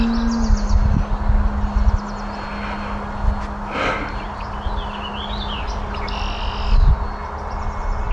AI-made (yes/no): no